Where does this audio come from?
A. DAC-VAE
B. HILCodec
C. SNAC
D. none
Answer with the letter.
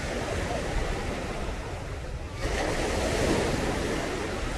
D